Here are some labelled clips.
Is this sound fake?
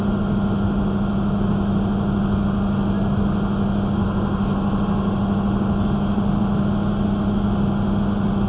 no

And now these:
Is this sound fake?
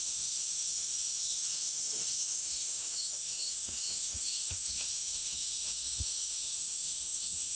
yes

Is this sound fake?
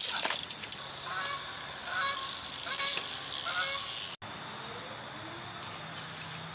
no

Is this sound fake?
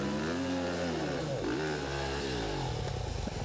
no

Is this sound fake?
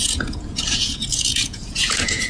yes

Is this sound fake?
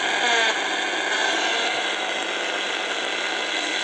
no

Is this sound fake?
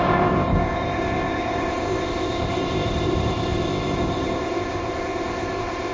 yes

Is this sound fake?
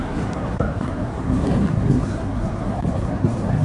yes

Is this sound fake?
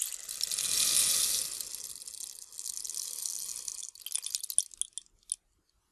no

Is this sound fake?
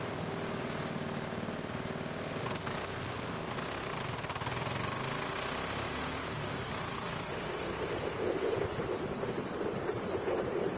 no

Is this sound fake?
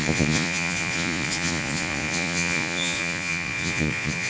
yes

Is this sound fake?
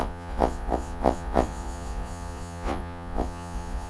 yes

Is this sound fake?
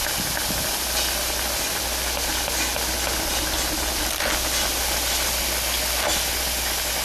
no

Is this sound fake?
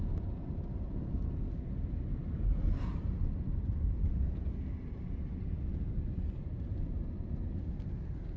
no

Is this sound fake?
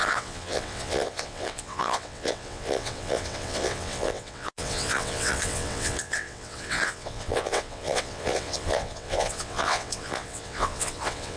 yes